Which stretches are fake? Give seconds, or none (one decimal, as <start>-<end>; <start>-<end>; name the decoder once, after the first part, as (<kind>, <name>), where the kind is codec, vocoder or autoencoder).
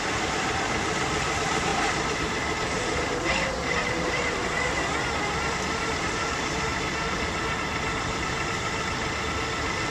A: 0.0-1.7 (vocoder, BigVGAN v2); 5.4-6.7; 7.6-9.9